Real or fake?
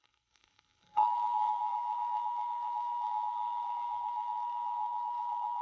fake